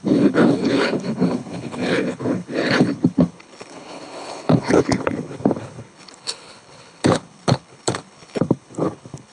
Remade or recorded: remade